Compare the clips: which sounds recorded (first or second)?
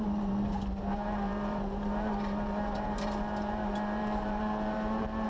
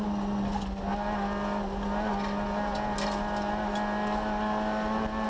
second